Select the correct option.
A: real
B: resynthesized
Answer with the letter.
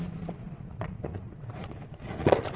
B